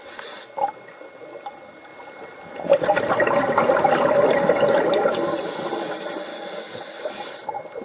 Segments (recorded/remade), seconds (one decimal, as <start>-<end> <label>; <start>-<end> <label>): 0.0-6.3 recorded; 6.3-7.1 remade; 7.1-7.8 recorded